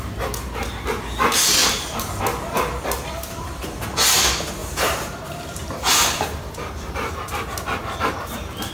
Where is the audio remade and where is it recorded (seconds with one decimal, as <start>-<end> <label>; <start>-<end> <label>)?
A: 0.0-1.6 recorded; 1.6-2.2 remade; 2.2-4.6 recorded; 4.6-8.7 remade